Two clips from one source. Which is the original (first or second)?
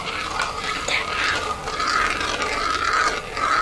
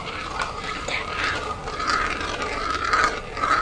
first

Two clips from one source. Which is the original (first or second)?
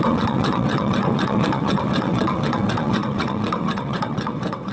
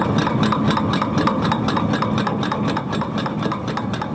second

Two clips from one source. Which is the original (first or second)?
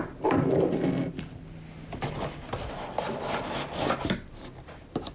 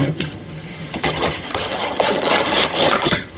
first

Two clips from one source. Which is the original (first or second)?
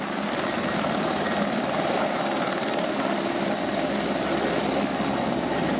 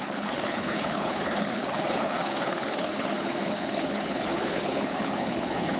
first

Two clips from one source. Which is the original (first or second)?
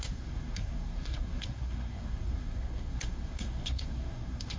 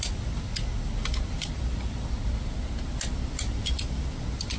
second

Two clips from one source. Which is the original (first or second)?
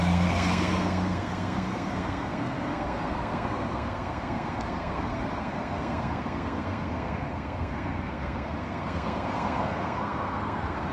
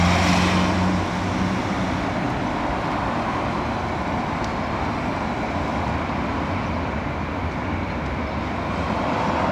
second